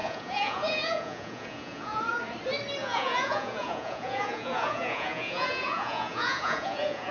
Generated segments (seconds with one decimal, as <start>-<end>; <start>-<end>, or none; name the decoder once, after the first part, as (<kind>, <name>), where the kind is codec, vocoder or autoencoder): 0.0-2.0 (vocoder, Vocos); 2.8-7.1